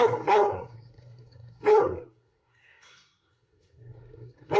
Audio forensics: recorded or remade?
remade